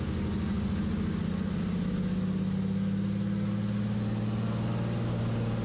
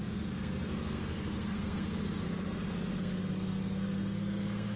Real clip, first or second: first